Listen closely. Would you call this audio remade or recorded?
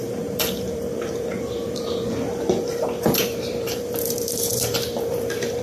remade